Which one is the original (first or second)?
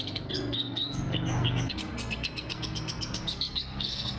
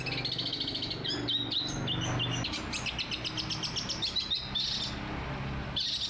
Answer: second